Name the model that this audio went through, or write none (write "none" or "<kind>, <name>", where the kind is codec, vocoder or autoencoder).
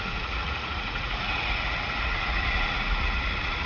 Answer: vocoder, Vocos